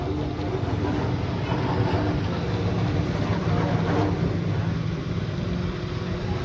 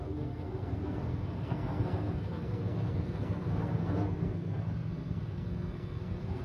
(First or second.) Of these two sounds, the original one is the first